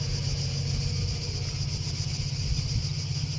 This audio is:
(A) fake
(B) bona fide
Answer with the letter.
B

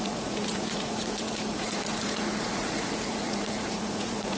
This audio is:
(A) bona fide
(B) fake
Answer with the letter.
B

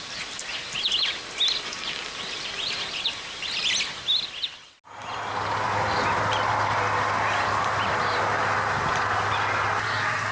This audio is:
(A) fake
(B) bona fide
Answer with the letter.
B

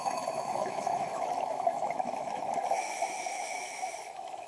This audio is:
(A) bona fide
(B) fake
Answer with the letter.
B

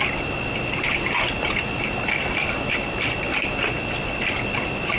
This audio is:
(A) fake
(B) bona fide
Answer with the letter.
B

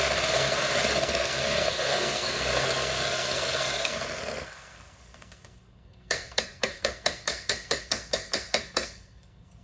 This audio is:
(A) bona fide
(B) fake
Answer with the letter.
B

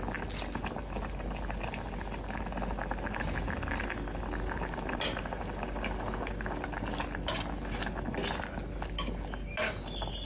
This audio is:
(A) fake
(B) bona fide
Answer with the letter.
B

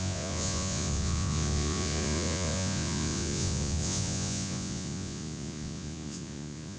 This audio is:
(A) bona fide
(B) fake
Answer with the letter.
B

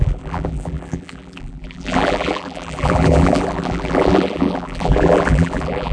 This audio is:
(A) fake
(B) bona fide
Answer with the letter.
A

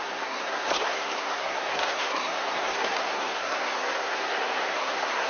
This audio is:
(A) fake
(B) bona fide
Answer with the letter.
A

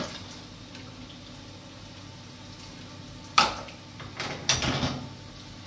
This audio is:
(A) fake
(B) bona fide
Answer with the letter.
B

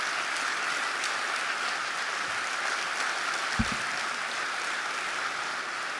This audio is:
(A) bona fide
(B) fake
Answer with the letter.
A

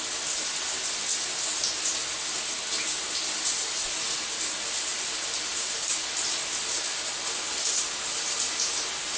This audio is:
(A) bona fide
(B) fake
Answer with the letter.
A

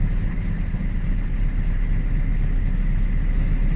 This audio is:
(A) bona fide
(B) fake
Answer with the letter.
A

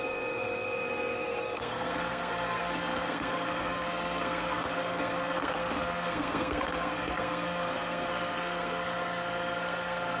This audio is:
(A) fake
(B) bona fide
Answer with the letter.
A